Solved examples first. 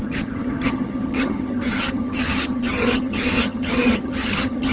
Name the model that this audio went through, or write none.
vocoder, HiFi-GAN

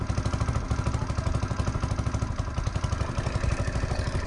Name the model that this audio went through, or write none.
none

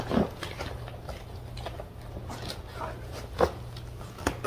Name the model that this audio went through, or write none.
none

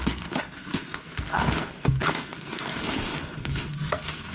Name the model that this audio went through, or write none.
codec, SNAC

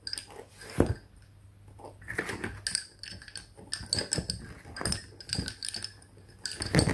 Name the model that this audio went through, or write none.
none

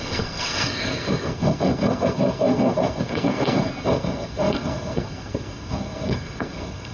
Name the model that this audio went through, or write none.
codec, SNAC